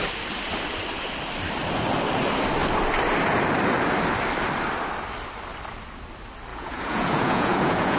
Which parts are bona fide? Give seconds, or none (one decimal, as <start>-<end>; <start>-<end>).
0.0-6.5